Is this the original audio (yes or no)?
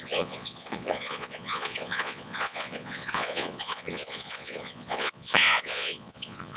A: no